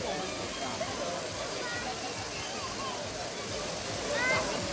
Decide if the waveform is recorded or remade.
recorded